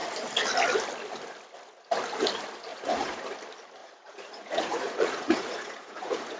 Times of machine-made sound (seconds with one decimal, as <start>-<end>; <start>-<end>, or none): 2.7-3.2; 3.8-6.4